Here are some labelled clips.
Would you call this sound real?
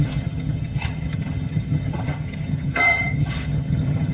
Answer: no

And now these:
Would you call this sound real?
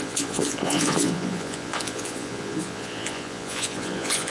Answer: no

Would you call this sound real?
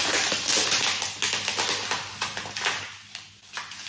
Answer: yes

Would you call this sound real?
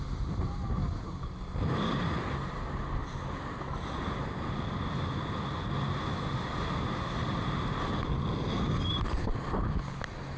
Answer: yes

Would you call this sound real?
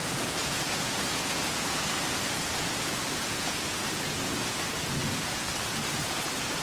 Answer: no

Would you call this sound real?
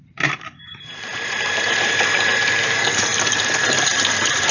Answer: no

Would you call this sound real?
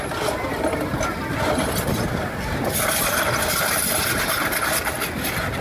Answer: yes